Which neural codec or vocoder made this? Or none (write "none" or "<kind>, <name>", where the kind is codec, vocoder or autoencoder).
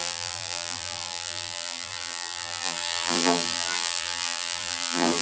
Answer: vocoder, BigVGAN v2